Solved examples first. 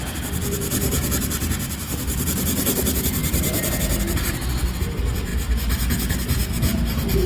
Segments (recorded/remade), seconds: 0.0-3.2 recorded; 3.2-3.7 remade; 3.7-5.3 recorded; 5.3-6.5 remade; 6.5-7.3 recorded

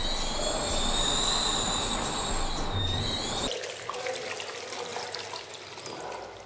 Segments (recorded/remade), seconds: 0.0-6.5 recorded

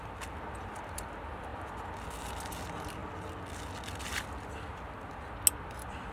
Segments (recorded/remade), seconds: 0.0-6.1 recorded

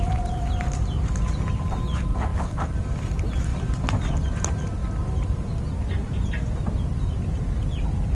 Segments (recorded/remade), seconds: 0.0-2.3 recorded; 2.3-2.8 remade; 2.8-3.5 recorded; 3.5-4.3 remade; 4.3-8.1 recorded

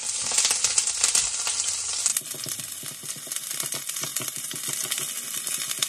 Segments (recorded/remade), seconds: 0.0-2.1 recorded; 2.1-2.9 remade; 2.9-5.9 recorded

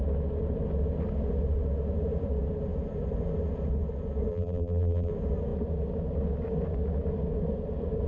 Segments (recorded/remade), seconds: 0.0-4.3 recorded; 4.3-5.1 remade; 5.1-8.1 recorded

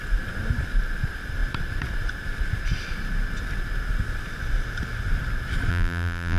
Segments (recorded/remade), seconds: 0.0-5.7 recorded; 5.7-6.4 remade